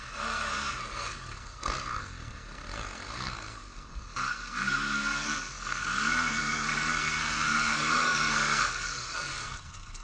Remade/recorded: remade